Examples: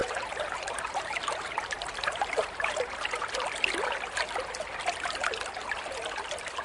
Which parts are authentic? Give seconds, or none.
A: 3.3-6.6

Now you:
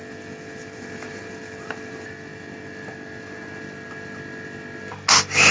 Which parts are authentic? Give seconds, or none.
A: 2.3-5.5

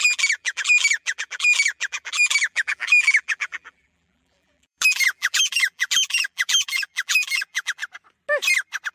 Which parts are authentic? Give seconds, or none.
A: 7.8-8.9

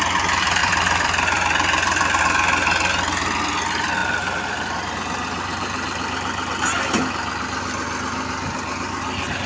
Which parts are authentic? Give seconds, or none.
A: 0.0-0.6; 2.2-4.0; 4.9-9.5